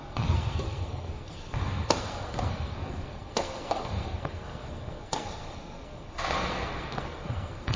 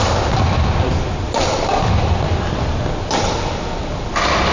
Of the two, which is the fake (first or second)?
first